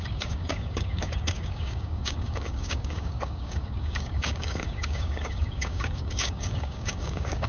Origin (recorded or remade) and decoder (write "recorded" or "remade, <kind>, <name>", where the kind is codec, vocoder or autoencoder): remade, codec, DAC